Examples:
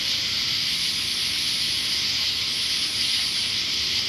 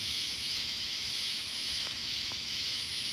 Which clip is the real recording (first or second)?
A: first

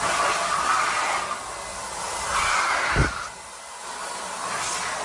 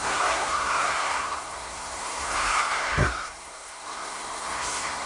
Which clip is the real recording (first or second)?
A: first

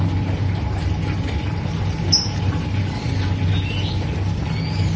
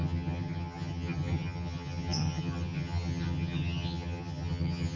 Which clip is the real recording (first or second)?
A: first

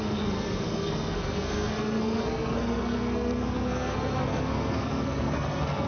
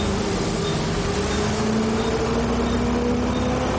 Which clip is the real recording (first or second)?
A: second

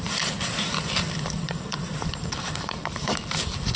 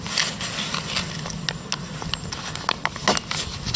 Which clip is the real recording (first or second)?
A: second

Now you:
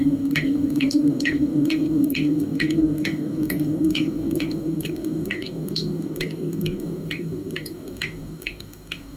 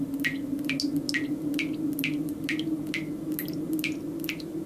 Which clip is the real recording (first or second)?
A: second